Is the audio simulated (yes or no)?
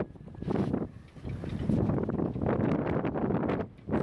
no